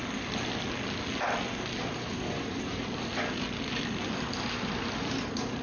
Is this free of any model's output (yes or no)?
yes